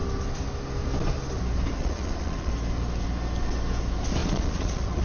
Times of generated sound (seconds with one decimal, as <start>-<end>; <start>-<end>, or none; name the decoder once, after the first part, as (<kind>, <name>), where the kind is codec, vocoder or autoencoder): 1.8-2.5 (vocoder, Vocos); 4.2-5.0